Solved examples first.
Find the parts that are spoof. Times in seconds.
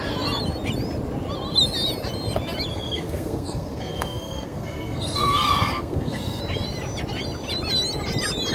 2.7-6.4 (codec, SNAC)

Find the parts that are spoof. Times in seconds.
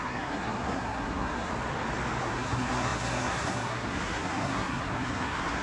0.0-1.5 (codec, SNAC); 2.2-5.6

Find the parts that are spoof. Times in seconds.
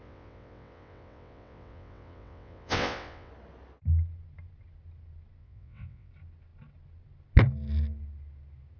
0.0-3.3 (vocoder, WaveNeXt); 5.4-6.1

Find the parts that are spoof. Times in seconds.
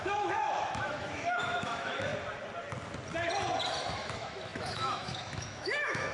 0.0-2.1 (autoencoder, DAC-VAE); 4.0-6.1